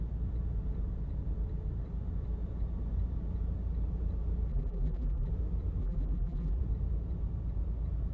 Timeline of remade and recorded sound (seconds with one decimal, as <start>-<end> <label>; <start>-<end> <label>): 0.0-4.5 recorded; 4.5-5.3 remade; 5.3-5.8 recorded; 5.8-6.6 remade; 6.6-8.1 recorded